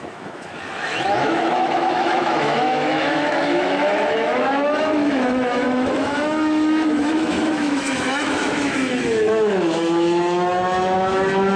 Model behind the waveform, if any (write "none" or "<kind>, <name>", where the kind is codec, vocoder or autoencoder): autoencoder, DAC-VAE